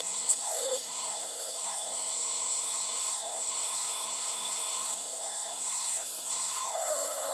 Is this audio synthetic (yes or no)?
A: yes